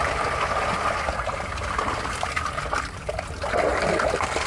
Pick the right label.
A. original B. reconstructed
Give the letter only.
A